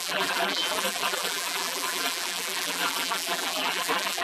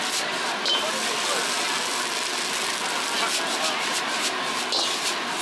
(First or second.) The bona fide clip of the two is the second